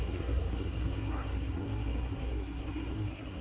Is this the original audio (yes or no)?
no